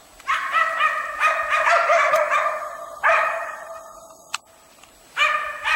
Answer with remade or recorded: remade